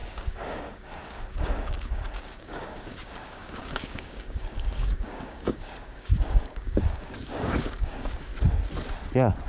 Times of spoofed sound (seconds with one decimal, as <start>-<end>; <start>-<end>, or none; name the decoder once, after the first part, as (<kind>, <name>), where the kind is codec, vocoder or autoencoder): 0.0-8.3 (codec, DAC)